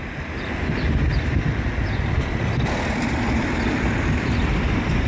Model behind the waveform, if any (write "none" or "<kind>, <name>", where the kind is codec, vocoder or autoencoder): none